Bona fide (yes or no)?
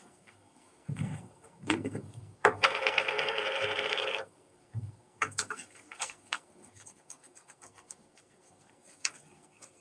no